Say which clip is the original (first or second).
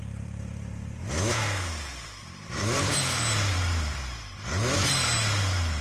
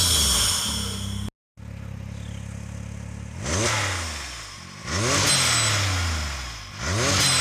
second